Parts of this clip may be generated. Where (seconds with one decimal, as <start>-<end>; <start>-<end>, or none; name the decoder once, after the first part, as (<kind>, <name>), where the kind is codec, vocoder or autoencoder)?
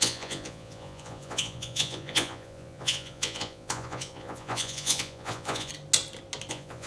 0.0-5.7 (vocoder, Vocos); 6.5-6.9